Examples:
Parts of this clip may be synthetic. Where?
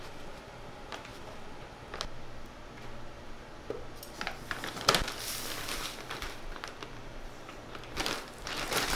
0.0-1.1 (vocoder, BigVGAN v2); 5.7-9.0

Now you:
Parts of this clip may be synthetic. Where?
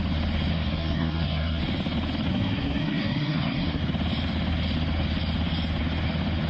0.5-1.6 (codec, SNAC); 2.3-3.8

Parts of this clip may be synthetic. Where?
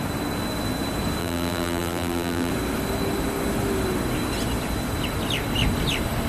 1.2-2.5 (vocoder, BigVGAN v2)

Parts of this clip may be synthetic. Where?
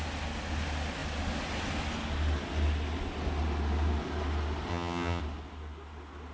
4.7-5.2 (vocoder, HiFi-GAN)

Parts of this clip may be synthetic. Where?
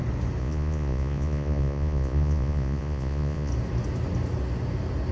0.4-3.5 (vocoder, Vocos)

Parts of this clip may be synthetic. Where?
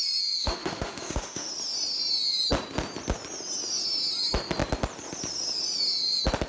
0.4-1.5 (autoencoder, DAC-VAE)